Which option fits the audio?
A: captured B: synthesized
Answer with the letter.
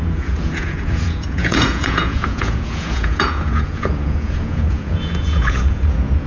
B